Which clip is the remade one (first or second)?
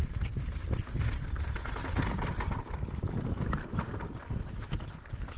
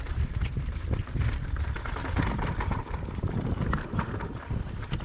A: second